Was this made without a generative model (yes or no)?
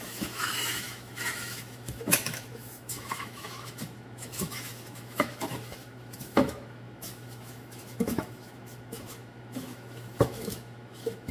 no